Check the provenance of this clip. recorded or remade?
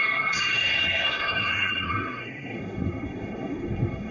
remade